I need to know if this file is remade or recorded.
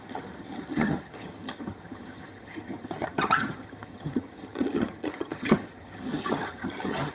remade